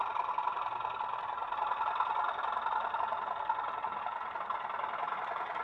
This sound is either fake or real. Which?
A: real